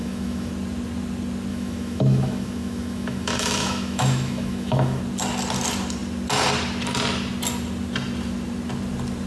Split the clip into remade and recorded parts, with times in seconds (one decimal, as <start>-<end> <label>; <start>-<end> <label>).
0.0-0.5 remade; 0.5-1.5 recorded; 1.5-5.0 remade; 5.0-9.3 recorded